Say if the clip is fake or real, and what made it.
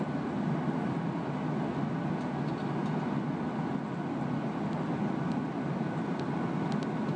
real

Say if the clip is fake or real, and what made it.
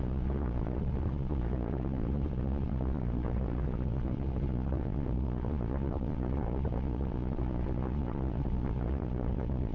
fake, vocoder, Vocos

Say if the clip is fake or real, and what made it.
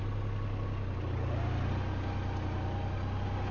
real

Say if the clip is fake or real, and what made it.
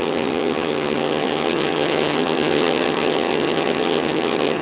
fake, vocoder, HiFi-GAN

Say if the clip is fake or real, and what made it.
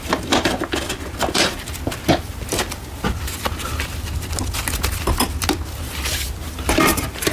real